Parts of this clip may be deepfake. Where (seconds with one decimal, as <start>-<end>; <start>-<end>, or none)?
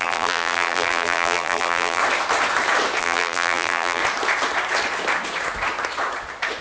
0.0-2.0; 3.0-4.0